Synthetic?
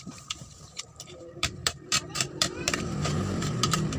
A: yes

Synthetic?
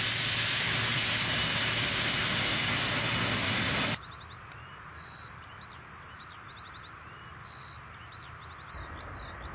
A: no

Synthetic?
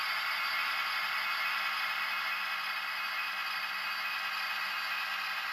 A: no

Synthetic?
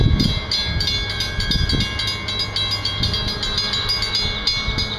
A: no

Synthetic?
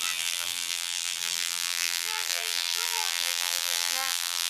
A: yes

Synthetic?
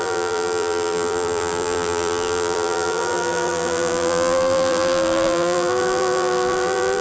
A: yes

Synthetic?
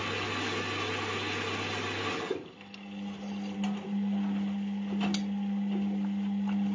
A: no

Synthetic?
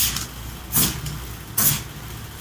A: no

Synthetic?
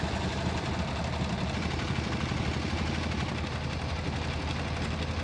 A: no